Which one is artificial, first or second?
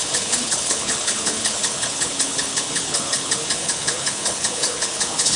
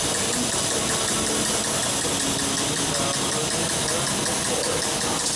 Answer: first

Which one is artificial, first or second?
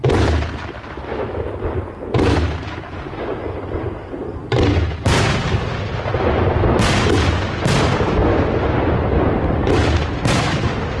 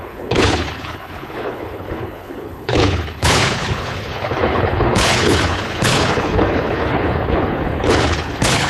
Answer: second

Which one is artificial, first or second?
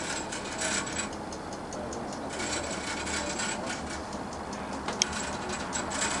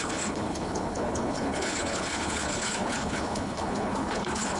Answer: second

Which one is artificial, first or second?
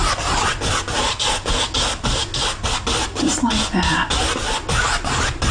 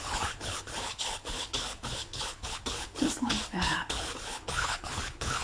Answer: second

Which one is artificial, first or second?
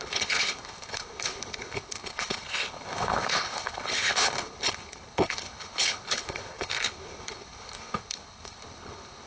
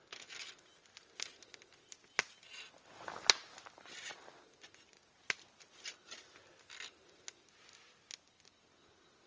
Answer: first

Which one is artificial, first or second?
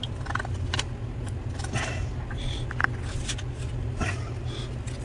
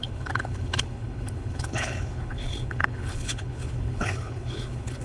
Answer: second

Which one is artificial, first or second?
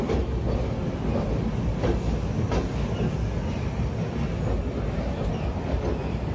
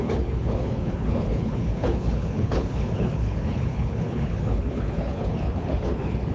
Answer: second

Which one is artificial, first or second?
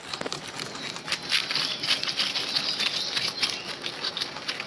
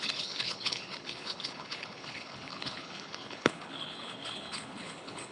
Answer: second